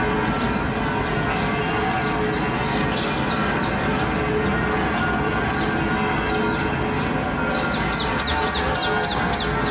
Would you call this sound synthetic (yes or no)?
no